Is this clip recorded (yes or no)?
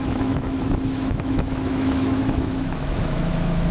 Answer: no